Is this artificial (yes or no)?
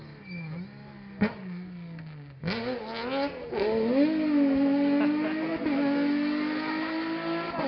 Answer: no